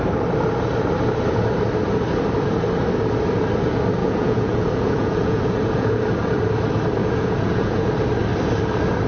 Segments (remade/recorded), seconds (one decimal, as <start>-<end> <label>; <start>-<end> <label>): 0.0-4.0 recorded; 4.0-6.0 remade; 6.0-7.0 recorded; 7.0-7.9 remade; 7.9-9.1 recorded